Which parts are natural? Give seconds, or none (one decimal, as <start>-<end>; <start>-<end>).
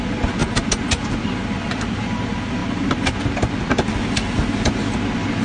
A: 0.0-5.4